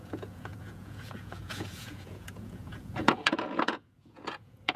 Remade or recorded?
remade